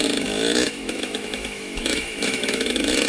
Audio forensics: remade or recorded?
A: remade